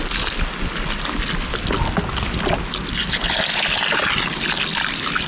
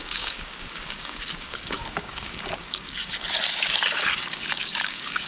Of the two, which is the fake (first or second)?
second